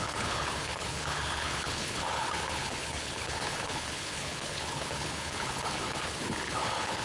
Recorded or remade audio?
remade